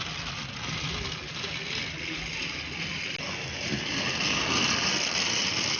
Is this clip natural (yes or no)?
yes